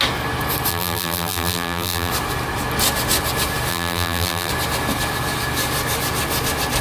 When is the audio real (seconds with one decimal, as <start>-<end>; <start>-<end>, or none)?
0.0-0.7; 2.1-3.7; 4.5-6.8